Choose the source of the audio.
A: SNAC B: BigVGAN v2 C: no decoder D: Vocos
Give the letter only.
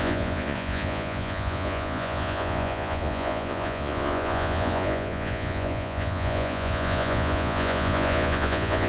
D